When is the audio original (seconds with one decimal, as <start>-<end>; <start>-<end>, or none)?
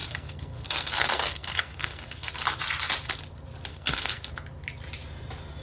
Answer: 2.3-3.7; 4.3-5.6